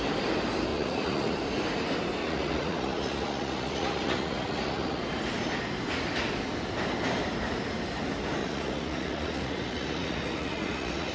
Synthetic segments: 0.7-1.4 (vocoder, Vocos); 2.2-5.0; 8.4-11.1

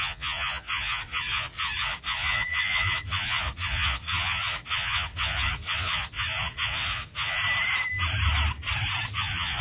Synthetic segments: 0.0-7.4 (vocoder, Vocos); 9.1-9.6

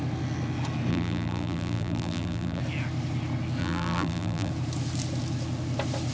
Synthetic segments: 0.9-2.6 (vocoder, BigVGAN v2); 3.6-4.5

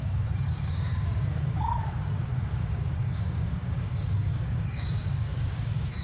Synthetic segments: 0.0-6.0 (codec, DAC)